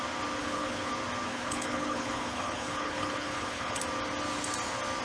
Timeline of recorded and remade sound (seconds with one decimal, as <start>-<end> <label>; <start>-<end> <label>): 0.0-0.4 recorded; 0.4-0.9 remade; 0.9-1.3 recorded; 1.3-3.8 remade; 3.8-5.0 recorded